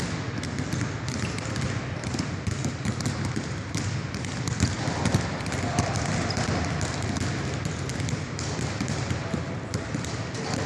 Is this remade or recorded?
recorded